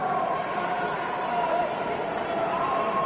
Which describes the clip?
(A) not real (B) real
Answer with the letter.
B